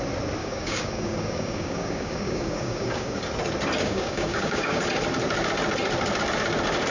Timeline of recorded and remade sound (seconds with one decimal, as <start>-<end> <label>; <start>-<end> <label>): 0.0-0.4 recorded; 0.4-3.2 remade; 3.2-3.8 recorded; 3.8-4.8 remade; 4.8-6.9 recorded